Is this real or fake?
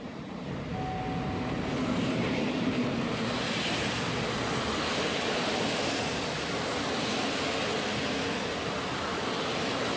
real